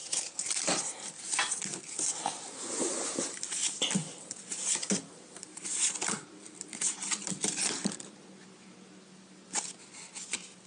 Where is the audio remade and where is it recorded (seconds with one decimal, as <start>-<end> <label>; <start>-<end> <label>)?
0.0-1.1 remade; 1.1-4.0 recorded; 4.0-8.1 remade; 8.1-10.7 recorded